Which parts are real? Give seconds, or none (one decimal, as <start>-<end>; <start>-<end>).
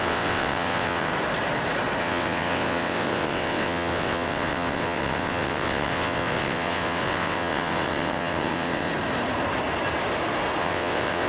1.1-2.0; 8.9-10.6